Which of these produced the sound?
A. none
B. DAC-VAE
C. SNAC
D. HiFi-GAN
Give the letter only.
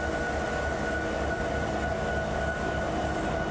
A